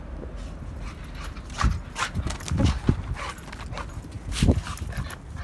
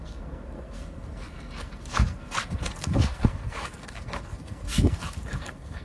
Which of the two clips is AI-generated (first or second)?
second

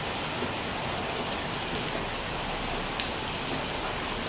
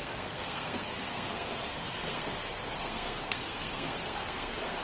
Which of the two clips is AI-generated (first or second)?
second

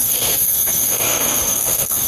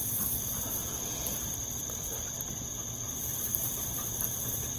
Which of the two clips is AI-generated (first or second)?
first